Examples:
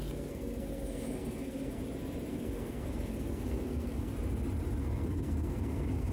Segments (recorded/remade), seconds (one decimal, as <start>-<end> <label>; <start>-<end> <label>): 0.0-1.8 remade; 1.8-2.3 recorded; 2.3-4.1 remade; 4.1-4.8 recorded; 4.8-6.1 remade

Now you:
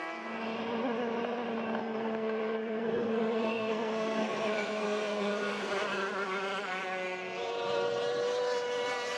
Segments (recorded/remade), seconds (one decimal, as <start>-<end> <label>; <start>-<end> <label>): 0.0-1.8 recorded; 1.8-5.7 remade; 5.7-9.2 recorded

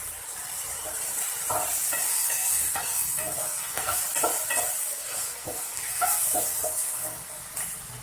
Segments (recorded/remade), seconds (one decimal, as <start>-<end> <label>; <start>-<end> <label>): 0.0-2.1 recorded; 2.1-4.0 remade; 4.0-4.8 recorded; 4.8-7.4 remade; 7.4-8.0 recorded